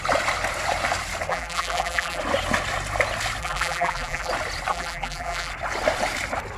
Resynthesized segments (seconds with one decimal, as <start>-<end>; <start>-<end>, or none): 1.3-2.2; 3.4-4.3; 4.7-5.5